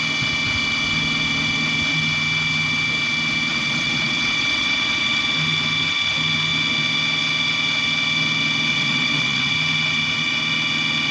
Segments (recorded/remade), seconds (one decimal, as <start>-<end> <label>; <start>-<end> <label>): 0.0-3.5 recorded; 3.5-5.2 remade; 5.2-8.7 recorded; 8.7-9.5 remade; 9.5-11.1 recorded